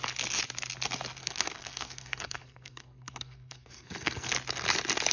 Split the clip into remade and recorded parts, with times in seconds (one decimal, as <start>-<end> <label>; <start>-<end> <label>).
0.0-1.2 recorded; 1.2-4.3 remade; 4.3-5.1 recorded